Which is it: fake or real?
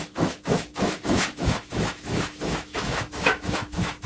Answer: fake